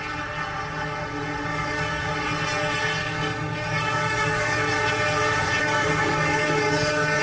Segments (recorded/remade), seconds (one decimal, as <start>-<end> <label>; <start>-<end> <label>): 0.0-1.5 recorded; 1.5-2.1 remade; 2.1-3.0 recorded; 3.0-4.8 remade; 4.8-5.6 recorded; 5.6-7.2 remade